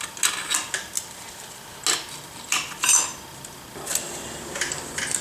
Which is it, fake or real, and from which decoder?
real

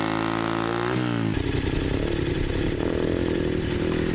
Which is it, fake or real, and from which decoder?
real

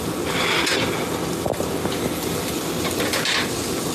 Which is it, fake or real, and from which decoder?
real